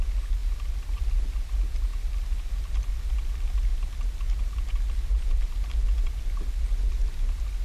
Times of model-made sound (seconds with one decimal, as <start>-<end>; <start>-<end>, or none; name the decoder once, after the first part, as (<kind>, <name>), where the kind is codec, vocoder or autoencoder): none